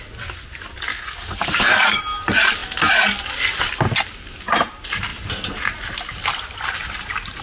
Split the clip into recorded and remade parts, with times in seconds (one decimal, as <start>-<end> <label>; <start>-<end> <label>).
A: 0.0-0.9 recorded; 0.9-2.0 remade; 2.0-7.4 recorded